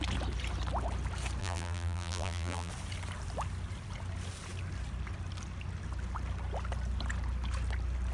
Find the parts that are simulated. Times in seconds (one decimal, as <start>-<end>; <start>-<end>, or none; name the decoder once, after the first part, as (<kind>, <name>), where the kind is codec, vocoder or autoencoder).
1.4-2.7 (vocoder, BigVGAN v2)